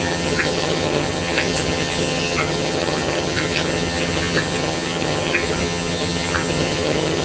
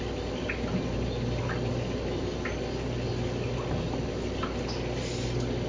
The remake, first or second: first